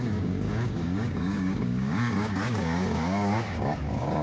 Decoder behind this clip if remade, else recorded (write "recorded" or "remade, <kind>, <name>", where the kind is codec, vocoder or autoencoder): remade, codec, DAC